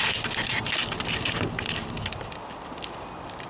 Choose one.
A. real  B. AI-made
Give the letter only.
A